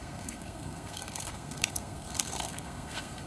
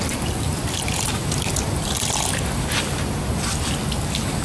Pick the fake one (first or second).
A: first